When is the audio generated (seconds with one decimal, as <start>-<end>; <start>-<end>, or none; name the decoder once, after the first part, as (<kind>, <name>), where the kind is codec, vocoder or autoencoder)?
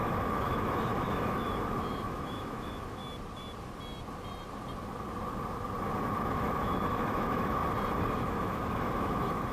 0.0-3.0 (autoencoder, DAC-VAE); 6.3-7.6; 8.1-9.5